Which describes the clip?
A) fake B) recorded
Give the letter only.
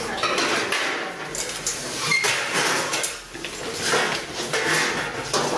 B